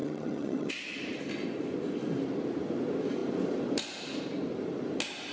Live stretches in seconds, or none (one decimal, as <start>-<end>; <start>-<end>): 0.7-5.3

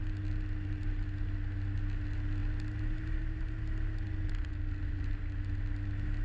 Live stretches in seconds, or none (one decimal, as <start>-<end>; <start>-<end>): 0.0-6.2

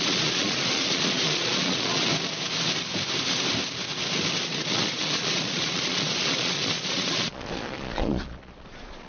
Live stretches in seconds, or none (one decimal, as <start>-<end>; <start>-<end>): 2.1-4.4

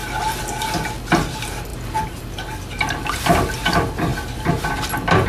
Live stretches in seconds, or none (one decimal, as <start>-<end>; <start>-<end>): 0.7-5.3

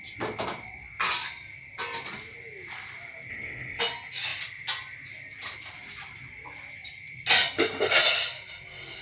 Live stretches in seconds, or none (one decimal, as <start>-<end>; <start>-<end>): 0.0-3.3; 3.8-9.0

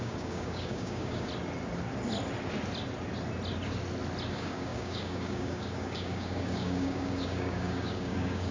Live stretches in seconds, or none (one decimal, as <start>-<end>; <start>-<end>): 1.3-4.3

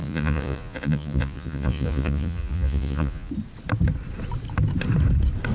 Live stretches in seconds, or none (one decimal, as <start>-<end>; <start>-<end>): 3.3-5.5

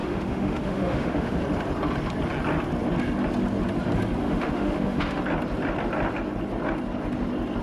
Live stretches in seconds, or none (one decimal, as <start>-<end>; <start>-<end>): 1.4-4.2; 5.2-7.6